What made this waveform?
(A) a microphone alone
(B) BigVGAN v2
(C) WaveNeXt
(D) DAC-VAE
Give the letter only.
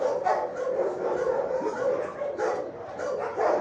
A